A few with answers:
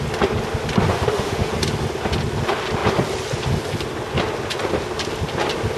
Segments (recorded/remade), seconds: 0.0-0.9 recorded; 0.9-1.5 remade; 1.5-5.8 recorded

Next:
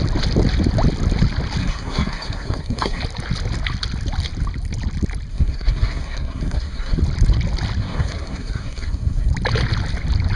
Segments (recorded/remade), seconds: 0.0-1.6 recorded; 1.6-3.0 remade; 3.0-5.3 recorded; 5.3-7.0 remade; 7.0-7.8 recorded; 7.8-9.3 remade; 9.3-10.4 recorded

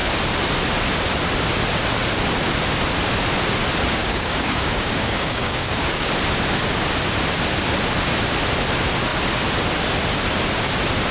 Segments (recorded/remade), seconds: 0.0-4.0 recorded; 4.0-6.1 remade; 6.1-11.1 recorded